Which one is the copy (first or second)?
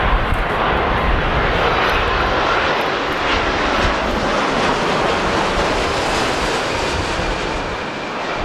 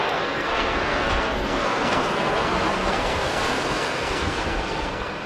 second